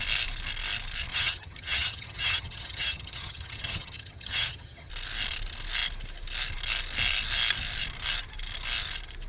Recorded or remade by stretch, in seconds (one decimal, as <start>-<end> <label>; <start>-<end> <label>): 0.0-1.1 recorded; 1.1-4.9 remade; 4.9-9.3 recorded